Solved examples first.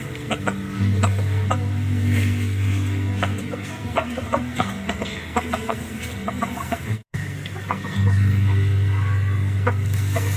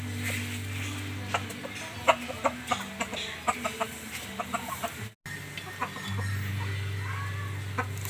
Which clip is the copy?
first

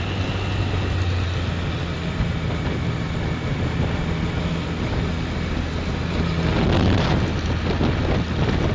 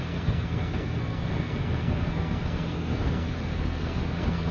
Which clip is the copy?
second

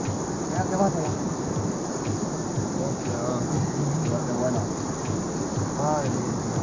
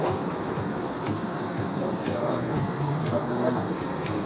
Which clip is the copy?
second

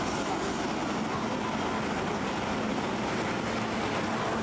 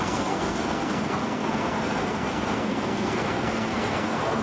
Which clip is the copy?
second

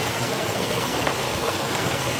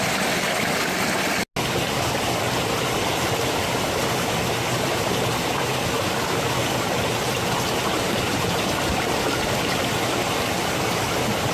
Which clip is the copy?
first